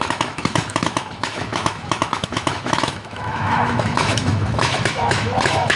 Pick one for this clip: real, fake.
fake